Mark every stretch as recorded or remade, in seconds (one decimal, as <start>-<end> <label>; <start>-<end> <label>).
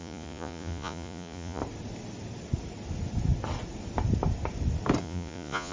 0.0-1.6 remade; 1.6-5.0 recorded; 5.0-5.7 remade